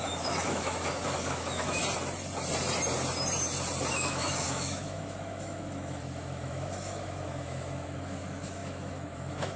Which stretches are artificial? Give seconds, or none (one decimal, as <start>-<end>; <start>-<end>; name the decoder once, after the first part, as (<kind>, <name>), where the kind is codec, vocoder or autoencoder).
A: 0.0-1.8 (autoencoder, DAC-VAE); 3.9-9.6